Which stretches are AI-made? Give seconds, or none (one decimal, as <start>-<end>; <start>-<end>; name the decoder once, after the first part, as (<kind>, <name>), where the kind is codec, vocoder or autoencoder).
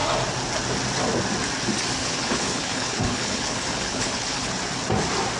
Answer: 2.0-4.5 (codec, HILCodec)